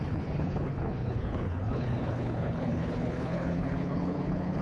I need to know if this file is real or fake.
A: fake